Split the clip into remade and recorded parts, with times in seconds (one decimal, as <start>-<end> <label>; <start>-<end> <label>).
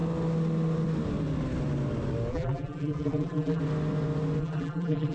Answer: 0.0-2.3 recorded; 2.3-3.6 remade; 3.6-4.4 recorded; 4.4-5.1 remade